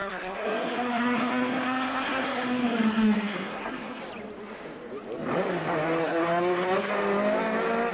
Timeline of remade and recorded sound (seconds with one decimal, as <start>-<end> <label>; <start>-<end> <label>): 0.0-4.0 remade; 4.0-6.0 recorded; 6.0-6.9 remade; 6.9-7.9 recorded